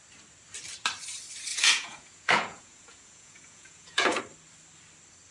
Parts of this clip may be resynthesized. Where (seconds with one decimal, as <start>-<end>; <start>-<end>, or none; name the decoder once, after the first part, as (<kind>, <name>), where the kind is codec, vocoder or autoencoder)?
1.5-4.2 (vocoder, Vocos)